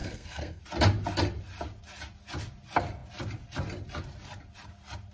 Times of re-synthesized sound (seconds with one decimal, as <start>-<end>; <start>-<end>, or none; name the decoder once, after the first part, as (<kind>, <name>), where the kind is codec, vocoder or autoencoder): 0.0-0.6 (codec, SNAC)